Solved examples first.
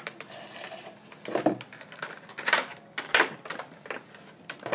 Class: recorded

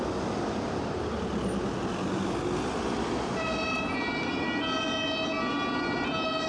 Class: recorded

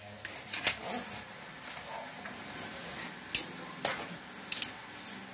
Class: recorded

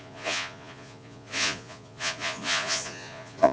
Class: remade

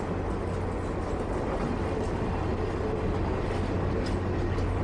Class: recorded